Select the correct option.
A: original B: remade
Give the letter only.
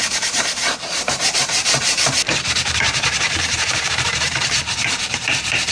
B